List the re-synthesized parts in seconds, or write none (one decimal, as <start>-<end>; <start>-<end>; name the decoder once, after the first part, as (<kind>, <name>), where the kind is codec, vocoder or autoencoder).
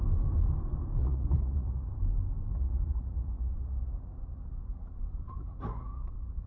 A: 1.0-1.9 (vocoder, Vocos); 2.5-6.5